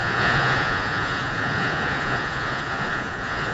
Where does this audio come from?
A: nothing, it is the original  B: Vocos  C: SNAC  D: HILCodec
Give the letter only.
B